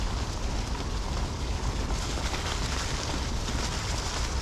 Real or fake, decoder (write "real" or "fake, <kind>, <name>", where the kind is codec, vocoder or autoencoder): real